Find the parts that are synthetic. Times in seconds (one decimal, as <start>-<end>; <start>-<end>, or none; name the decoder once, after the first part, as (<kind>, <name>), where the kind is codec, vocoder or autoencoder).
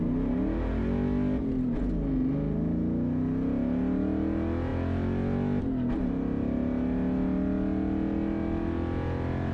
none